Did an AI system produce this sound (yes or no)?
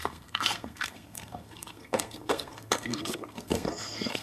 yes